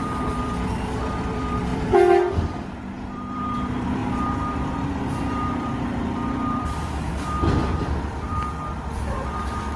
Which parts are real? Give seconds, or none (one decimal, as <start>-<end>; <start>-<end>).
4.0-4.9